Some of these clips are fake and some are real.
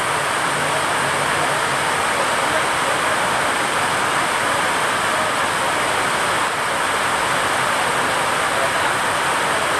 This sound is real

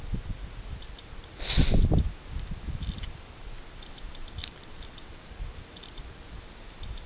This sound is real